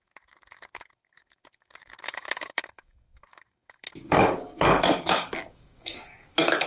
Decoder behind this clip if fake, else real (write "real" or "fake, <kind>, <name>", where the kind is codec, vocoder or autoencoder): fake, codec, DAC